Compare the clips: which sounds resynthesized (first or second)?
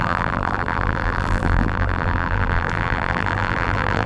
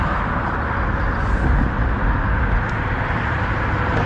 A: first